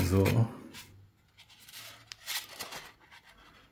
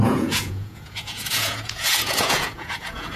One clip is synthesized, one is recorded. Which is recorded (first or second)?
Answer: first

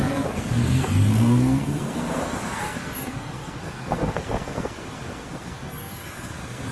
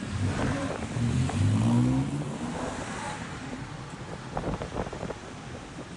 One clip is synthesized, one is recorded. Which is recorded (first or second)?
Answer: second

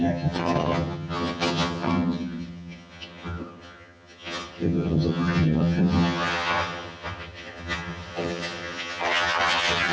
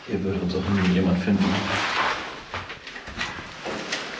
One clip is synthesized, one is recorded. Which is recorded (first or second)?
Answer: second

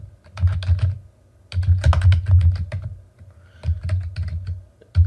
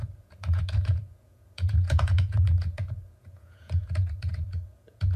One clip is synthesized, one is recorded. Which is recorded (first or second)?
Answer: first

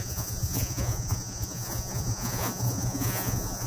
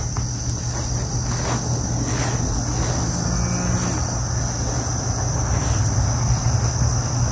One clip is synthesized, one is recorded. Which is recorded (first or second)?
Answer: second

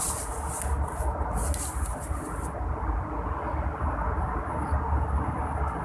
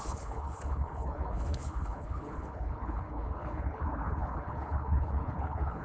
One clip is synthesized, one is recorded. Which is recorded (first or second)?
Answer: first